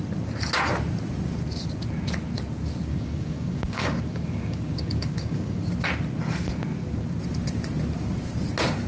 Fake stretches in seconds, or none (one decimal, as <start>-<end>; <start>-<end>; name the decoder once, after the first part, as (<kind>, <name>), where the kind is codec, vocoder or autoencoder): 2.9-5.6 (codec, DAC)